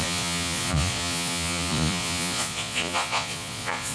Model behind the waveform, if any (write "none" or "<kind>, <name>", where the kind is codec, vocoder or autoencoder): vocoder, Vocos